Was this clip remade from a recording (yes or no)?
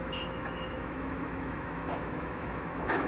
yes